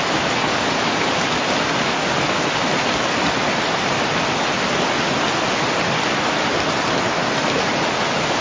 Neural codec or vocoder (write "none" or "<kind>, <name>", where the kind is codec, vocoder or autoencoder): none